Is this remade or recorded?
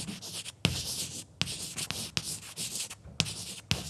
recorded